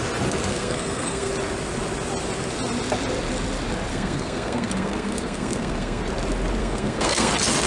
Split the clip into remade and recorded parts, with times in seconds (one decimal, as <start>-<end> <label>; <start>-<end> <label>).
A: 0.0-0.5 recorded; 0.5-1.3 remade; 1.3-3.9 recorded; 3.9-6.0 remade; 6.0-6.6 recorded; 6.6-7.3 remade; 7.3-7.7 recorded